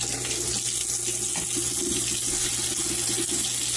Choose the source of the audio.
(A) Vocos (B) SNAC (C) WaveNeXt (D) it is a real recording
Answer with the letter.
D